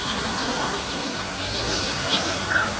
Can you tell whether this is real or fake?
fake